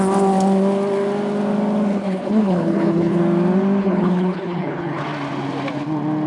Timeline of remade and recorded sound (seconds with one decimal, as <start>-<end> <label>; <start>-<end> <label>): 0.0-1.9 recorded; 1.9-3.2 remade; 3.2-3.8 recorded; 3.8-5.0 remade; 5.0-6.3 recorded